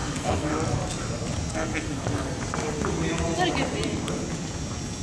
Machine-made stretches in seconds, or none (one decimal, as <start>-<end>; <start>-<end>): 0.0-0.5; 1.5-2.4